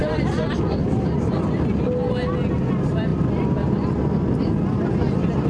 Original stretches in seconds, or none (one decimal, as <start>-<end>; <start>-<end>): 0.0-5.5